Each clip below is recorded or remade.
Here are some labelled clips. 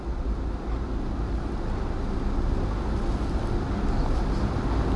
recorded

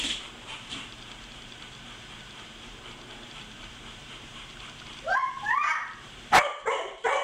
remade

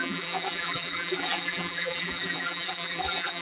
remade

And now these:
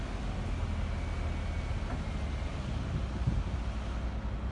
recorded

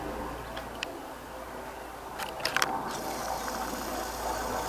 remade